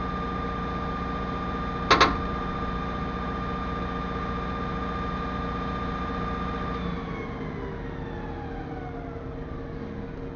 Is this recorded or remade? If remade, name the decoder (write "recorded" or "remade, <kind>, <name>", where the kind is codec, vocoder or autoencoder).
recorded